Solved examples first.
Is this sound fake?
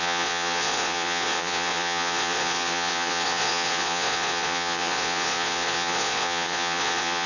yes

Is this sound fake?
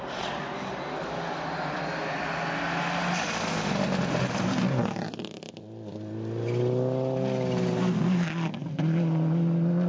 no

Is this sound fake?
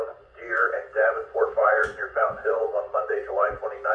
yes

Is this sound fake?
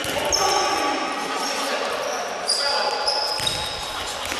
no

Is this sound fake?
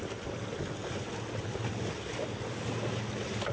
no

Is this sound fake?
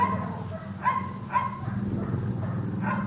no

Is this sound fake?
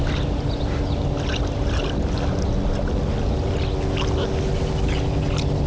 no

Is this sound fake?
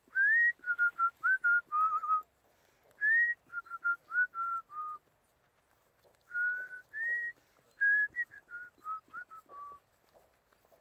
no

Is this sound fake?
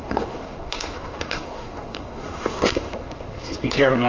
yes